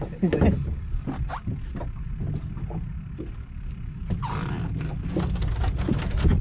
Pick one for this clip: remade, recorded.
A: recorded